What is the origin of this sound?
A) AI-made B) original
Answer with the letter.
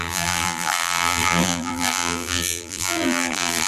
A